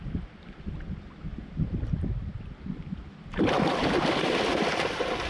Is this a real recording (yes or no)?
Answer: yes